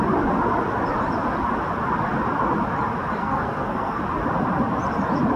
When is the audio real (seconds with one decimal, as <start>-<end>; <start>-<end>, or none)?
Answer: 0.0-3.2; 4.0-5.4